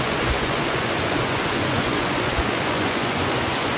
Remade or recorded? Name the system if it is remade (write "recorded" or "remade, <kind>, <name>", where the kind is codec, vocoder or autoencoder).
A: remade, vocoder, Vocos